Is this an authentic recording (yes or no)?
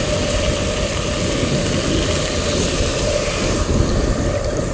yes